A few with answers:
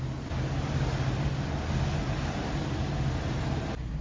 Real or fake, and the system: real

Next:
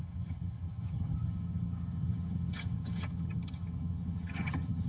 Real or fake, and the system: fake, vocoder, HiFi-GAN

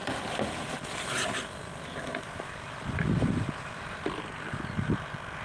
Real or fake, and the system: real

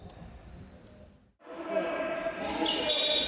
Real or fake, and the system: real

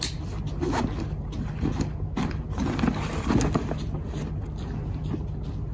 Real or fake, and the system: real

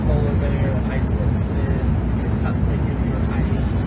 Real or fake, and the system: real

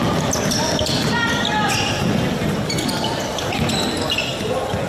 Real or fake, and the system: real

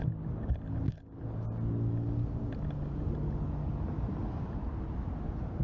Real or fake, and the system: real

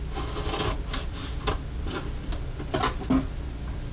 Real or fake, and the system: real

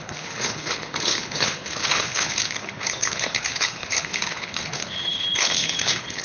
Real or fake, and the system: fake, codec, HILCodec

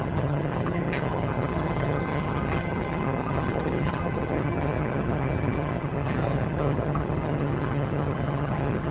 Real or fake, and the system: fake, vocoder, HiFi-GAN